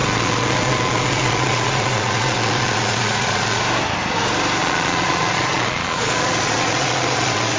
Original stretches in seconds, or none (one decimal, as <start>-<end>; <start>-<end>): 3.6-4.6